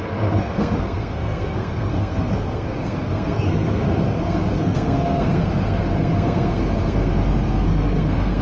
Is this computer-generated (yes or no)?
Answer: yes